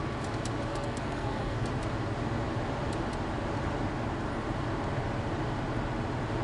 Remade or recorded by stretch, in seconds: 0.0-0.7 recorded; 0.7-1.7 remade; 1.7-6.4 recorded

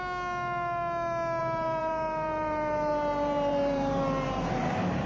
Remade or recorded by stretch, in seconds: 0.0-1.4 recorded; 1.4-4.5 remade; 4.5-5.1 recorded

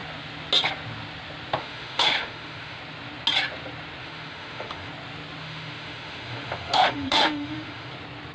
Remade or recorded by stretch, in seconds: 0.0-1.6 recorded; 1.6-2.8 remade; 2.8-4.0 recorded; 4.0-4.9 remade; 4.9-5.4 recorded; 5.4-7.9 remade; 7.9-8.3 recorded

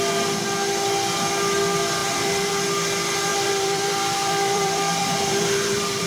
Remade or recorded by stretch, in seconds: 0.0-2.0 recorded; 2.0-2.5 remade; 2.5-3.3 recorded; 3.3-6.1 remade

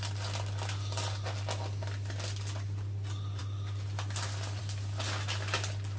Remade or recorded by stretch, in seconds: 0.0-3.4 recorded; 3.4-4.6 remade; 4.6-6.0 recorded

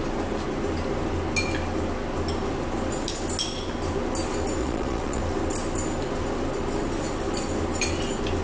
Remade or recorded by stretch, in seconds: 0.0-4.6 recorded; 4.6-5.2 remade; 5.2-8.4 recorded

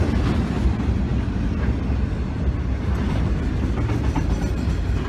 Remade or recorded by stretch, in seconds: 0.0-5.1 recorded